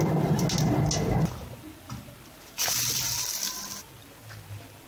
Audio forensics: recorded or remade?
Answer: recorded